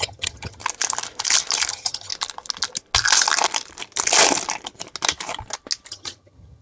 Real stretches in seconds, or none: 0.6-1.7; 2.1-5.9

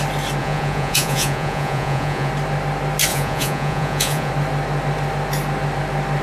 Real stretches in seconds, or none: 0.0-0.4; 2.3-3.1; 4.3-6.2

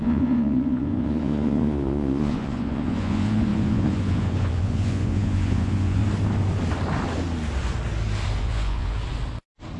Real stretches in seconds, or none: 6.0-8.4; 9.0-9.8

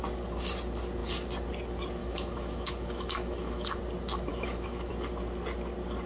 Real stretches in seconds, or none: 0.0-2.0; 3.8-4.3; 4.9-6.1

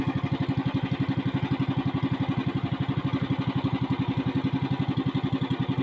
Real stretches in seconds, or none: 0.0-5.8

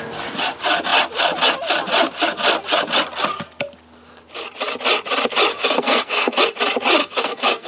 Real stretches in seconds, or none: 0.0-5.5; 6.4-7.0